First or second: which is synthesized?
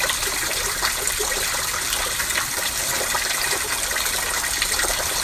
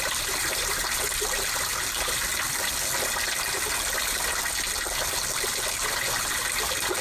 first